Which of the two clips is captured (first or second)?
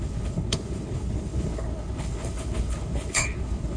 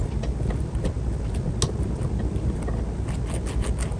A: second